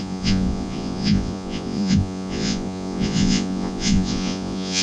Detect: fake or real fake